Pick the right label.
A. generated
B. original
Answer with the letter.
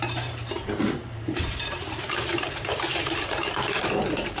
A